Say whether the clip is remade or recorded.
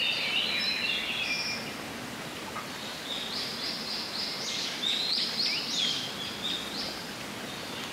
recorded